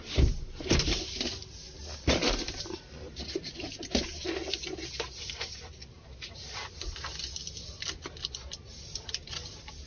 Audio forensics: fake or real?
real